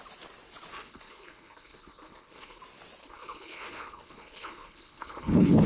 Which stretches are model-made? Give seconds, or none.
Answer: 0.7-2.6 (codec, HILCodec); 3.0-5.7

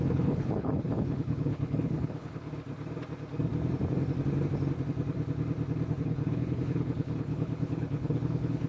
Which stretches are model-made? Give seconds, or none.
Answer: 0.0-2.5 (codec, HILCodec); 5.9-8.7

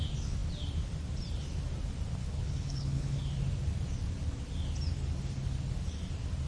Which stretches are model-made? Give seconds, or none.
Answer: 2.2-3.2 (codec, HILCodec)

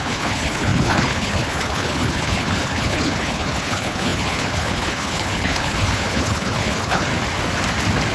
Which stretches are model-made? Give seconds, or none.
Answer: 0.0-7.1 (codec, HILCodec)

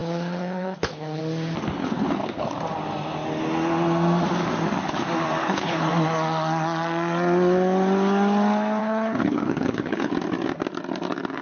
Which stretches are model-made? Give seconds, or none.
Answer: 0.0-1.2 (codec, HILCodec); 1.8-2.5; 5.4-5.9; 8.8-10.1

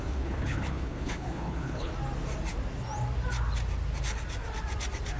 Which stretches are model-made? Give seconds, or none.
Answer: 0.0-1.9 (codec, HILCodec)

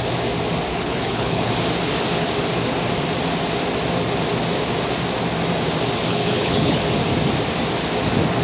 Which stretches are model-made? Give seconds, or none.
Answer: 0.7-1.5 (codec, HILCodec); 6.1-6.8

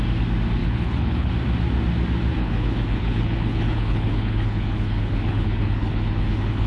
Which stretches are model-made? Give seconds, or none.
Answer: 0.6-1.3 (codec, HILCodec); 2.4-6.7